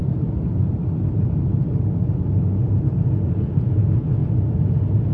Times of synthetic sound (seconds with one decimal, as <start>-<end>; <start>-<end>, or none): 3.1-4.2